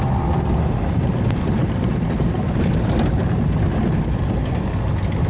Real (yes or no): yes